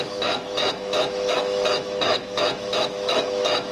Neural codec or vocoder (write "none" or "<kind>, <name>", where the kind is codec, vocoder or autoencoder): autoencoder, DAC-VAE